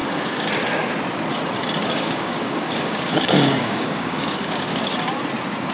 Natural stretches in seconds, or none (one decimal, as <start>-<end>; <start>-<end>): 0.5-1.8; 4.9-5.7